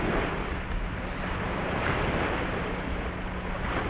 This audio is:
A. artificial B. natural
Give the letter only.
B